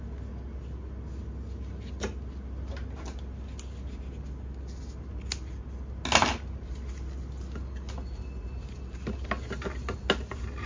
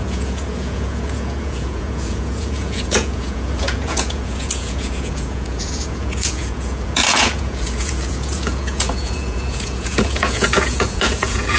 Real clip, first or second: first